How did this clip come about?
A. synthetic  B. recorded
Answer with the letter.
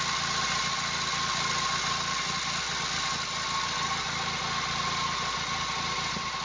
B